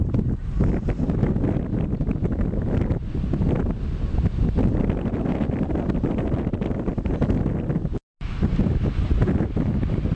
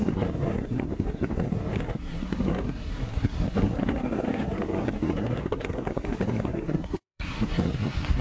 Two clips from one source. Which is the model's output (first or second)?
second